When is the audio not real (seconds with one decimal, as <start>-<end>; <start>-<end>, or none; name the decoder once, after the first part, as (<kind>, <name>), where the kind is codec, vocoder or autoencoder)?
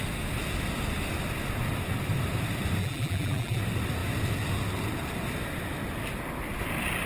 2.8-3.6 (vocoder, BigVGAN v2)